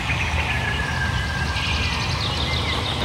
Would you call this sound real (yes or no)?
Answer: yes